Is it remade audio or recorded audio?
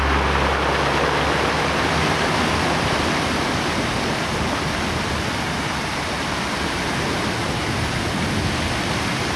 recorded